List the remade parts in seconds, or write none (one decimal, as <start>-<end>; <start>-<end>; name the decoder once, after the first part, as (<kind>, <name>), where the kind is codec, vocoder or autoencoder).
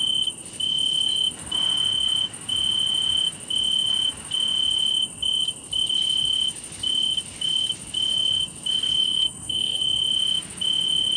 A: 9.0-9.8 (codec, SNAC)